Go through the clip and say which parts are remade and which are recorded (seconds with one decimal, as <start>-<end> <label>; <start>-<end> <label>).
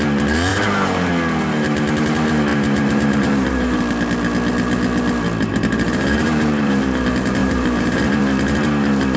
0.0-0.5 recorded; 0.5-1.1 remade; 1.1-2.5 recorded; 2.5-3.8 remade; 3.8-5.5 recorded; 5.5-6.8 remade; 6.8-7.4 recorded; 7.4-8.2 remade; 8.2-9.2 recorded